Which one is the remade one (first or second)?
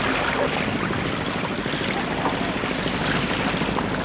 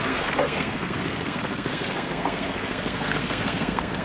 second